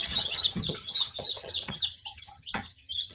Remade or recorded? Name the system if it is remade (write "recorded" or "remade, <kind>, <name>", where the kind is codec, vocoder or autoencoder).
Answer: remade, vocoder, HiFi-GAN